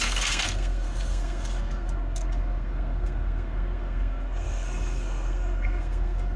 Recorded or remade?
remade